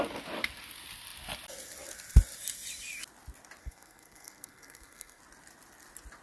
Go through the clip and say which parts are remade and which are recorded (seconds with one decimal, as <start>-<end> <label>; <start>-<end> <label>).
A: 0.0-3.6 recorded; 3.6-5.2 remade; 5.2-6.2 recorded